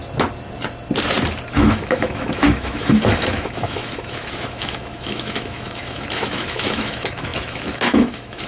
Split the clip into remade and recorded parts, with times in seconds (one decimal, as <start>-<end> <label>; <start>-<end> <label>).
0.0-1.5 recorded; 1.5-8.5 remade